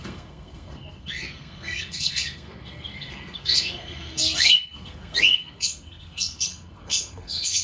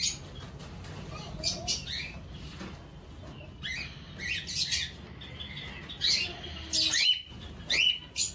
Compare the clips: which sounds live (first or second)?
second